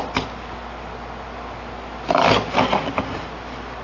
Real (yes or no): yes